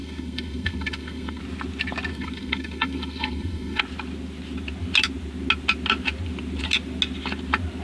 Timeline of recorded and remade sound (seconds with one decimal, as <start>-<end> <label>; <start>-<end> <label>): 0.0-1.4 remade; 1.4-2.1 recorded; 2.1-3.8 remade; 3.8-7.8 recorded